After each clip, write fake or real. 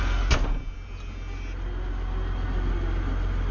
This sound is real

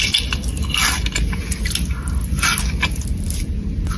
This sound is real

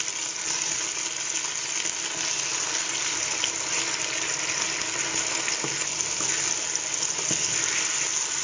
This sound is real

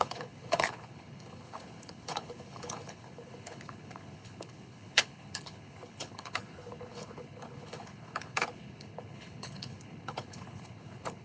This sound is fake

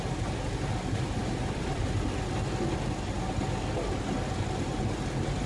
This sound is real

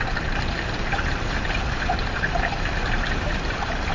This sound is real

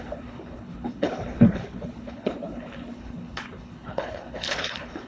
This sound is fake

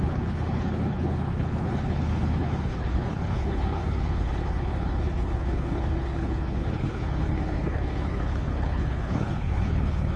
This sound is fake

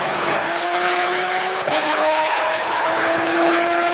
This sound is fake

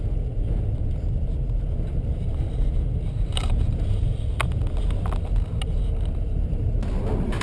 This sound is real